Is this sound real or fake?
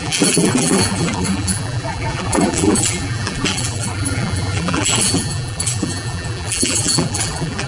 fake